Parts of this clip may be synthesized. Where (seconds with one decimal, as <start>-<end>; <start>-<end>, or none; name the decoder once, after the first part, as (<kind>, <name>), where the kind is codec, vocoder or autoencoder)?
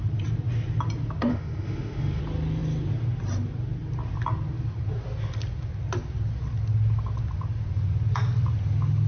1.3-2.2 (autoencoder, DAC-VAE)